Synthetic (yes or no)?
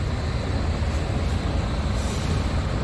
no